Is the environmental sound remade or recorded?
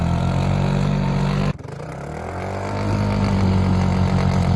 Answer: recorded